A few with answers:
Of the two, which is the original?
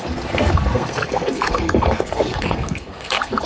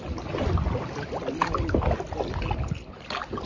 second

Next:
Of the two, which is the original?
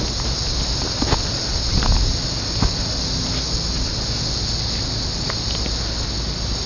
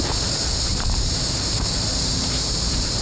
first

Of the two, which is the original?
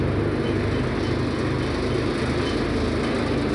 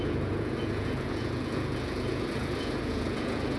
first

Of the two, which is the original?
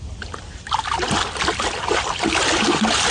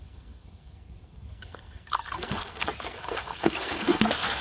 first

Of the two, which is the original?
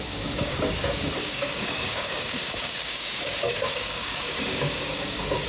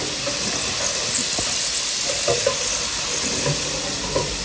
second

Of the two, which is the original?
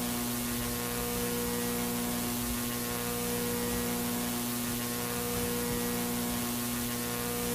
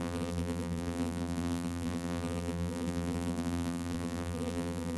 first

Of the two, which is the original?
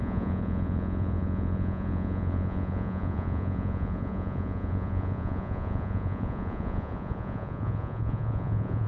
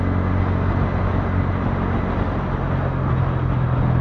second